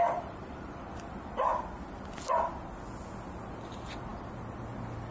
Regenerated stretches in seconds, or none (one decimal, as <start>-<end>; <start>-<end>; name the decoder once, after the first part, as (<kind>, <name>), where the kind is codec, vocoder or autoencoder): 0.0-1.5 (vocoder, BigVGAN v2); 3.1-4.1